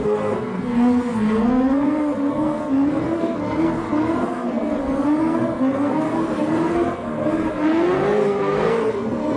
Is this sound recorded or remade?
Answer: remade